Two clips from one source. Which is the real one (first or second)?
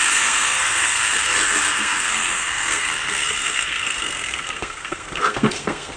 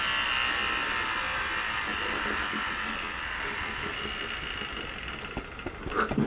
second